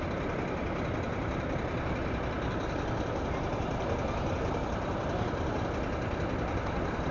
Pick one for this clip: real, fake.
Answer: real